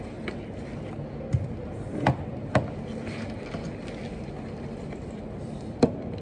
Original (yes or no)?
yes